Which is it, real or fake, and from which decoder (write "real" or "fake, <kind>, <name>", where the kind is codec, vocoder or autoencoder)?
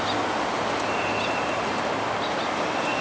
real